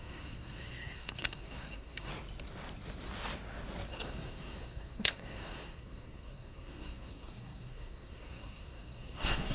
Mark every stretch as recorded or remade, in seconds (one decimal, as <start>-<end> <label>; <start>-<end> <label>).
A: 0.0-2.1 remade; 2.1-3.9 recorded; 3.9-9.5 remade